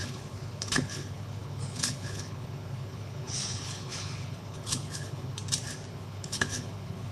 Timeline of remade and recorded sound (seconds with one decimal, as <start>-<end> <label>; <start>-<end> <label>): 0.0-5.4 remade; 5.4-5.9 recorded; 5.9-7.1 remade